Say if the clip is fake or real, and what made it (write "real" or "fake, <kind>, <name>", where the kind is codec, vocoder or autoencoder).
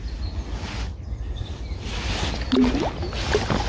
real